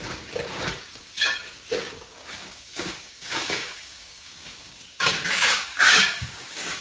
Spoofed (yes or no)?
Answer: yes